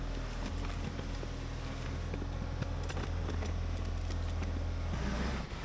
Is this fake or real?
real